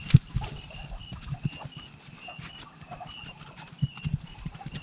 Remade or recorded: recorded